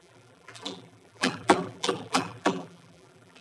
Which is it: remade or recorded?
remade